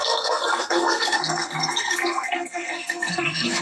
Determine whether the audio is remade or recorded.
remade